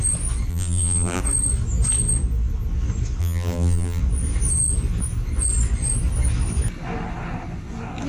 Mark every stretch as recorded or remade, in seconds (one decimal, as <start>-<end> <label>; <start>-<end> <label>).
0.0-0.5 recorded; 0.5-1.2 remade; 1.2-3.2 recorded; 3.2-4.0 remade; 4.0-8.1 recorded